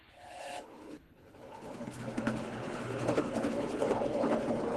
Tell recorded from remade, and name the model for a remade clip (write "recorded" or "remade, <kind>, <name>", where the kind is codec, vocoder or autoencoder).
remade, codec, HILCodec